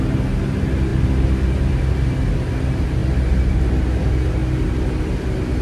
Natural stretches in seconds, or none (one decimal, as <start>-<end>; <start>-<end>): 0.0-5.6